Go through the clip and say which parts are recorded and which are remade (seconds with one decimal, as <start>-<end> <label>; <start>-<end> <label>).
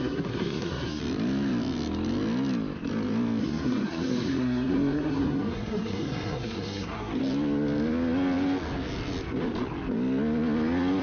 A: 0.0-1.0 remade; 1.0-3.4 recorded; 3.4-7.1 remade; 7.1-11.0 recorded